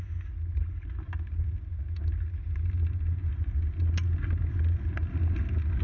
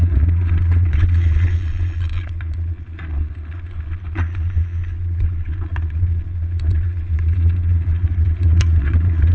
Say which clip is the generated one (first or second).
second